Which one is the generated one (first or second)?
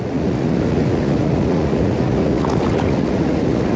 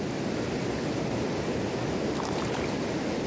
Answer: first